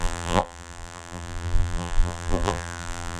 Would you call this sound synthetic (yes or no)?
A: yes